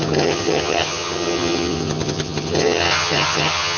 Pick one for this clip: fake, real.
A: fake